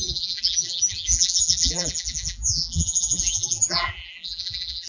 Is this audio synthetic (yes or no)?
yes